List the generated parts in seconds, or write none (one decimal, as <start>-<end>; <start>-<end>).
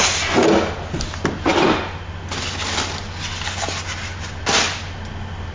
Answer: none